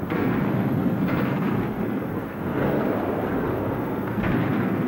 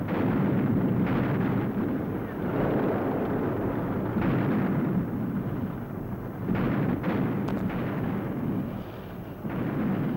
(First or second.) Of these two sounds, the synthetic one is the first